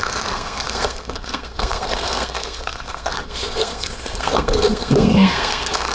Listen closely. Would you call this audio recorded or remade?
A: remade